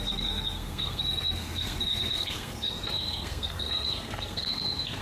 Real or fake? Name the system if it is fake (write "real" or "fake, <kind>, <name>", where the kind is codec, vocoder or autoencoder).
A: fake, codec, SNAC